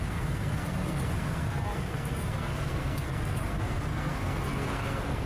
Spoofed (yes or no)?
yes